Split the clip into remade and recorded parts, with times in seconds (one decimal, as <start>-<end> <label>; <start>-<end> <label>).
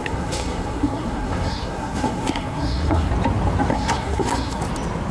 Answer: 0.0-3.1 remade; 3.1-3.7 recorded; 3.7-4.6 remade; 4.6-5.1 recorded